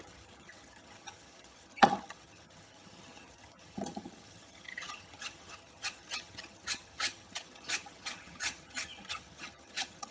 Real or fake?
fake